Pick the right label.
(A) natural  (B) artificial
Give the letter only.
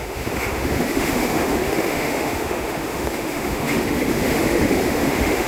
B